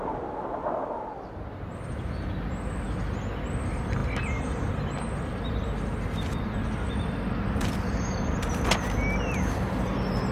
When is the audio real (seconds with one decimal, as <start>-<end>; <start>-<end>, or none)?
0.0-10.3